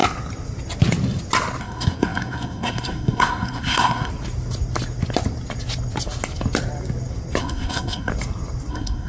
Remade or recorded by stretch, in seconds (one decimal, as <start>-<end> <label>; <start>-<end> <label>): 0.0-1.6 recorded; 1.6-4.1 remade; 4.1-7.4 recorded; 7.4-8.1 remade; 8.1-8.7 recorded; 8.7-9.1 remade